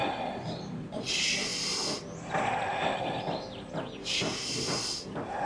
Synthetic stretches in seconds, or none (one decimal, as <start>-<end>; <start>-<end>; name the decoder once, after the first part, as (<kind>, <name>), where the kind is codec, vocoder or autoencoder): none